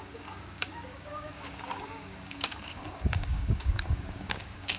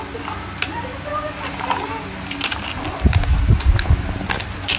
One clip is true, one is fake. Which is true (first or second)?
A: second